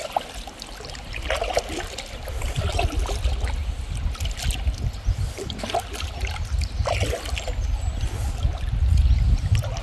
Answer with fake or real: real